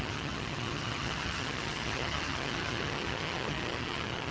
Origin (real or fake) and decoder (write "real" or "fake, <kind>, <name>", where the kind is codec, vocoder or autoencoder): fake, vocoder, HiFi-GAN